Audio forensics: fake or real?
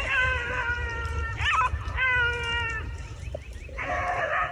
real